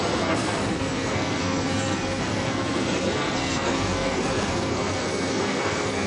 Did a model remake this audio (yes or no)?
yes